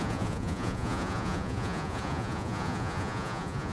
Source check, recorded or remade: remade